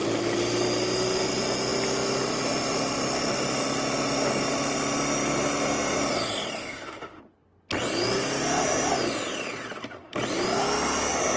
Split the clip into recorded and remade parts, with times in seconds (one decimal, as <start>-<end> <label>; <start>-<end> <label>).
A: 0.0-6.6 recorded; 6.6-7.2 remade; 7.2-11.4 recorded